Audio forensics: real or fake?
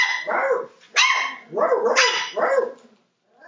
real